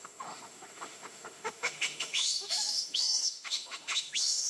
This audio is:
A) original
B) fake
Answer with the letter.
B